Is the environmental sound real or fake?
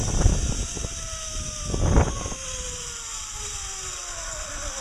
real